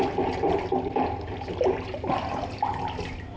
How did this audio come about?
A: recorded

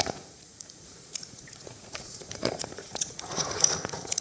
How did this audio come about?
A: remade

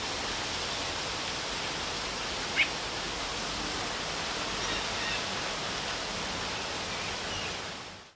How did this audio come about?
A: recorded